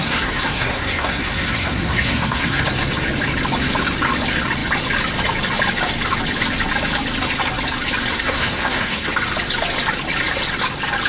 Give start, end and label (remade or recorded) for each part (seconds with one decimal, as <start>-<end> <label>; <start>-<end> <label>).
0.0-2.6 remade; 2.6-8.1 recorded; 8.1-9.1 remade; 9.1-11.1 recorded